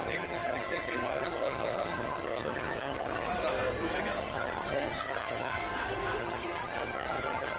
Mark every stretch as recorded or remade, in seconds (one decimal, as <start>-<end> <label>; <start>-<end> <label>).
0.0-3.3 remade; 3.3-4.2 recorded; 4.2-5.6 remade; 5.6-6.2 recorded; 6.2-7.6 remade

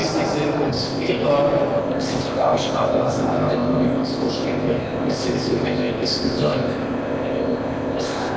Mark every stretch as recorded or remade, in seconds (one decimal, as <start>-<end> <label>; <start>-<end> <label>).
0.0-0.7 recorded; 0.7-1.3 remade; 1.3-1.8 recorded; 1.8-8.4 remade

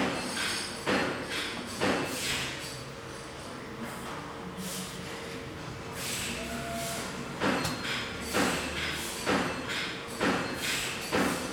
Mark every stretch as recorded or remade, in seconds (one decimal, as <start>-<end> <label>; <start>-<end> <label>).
0.0-1.0 recorded; 1.0-2.9 remade; 2.9-9.7 recorded; 9.7-10.8 remade; 10.8-11.5 recorded

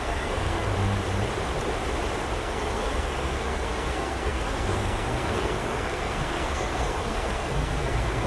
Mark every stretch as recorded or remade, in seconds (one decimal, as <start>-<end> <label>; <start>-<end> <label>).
0.0-0.7 remade; 0.7-2.4 recorded; 2.4-8.3 remade

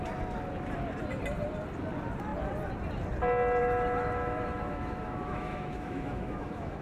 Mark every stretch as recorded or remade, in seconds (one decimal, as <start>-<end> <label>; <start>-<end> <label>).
0.0-3.6 recorded; 3.6-6.8 remade

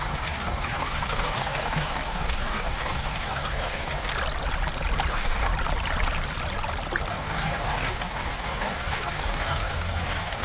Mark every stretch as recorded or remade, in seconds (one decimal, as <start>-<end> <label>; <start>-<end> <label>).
0.0-4.1 remade; 4.1-5.1 recorded; 5.1-5.5 remade; 5.5-7.1 recorded; 7.1-10.4 remade

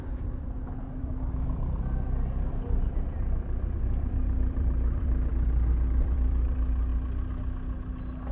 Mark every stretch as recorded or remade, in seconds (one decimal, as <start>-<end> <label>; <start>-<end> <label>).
0.0-6.9 remade; 6.9-8.3 recorded